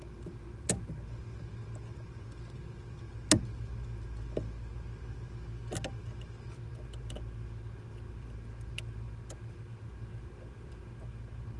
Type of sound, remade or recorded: recorded